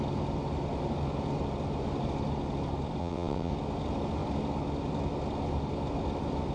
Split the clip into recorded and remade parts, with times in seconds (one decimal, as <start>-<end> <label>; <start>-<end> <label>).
0.0-3.0 recorded; 3.0-3.5 remade; 3.5-6.5 recorded